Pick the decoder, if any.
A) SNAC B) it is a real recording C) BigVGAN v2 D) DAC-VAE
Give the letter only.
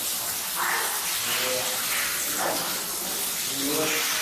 B